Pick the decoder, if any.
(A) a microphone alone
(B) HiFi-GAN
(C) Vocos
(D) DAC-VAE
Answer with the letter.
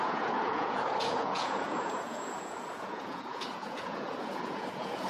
C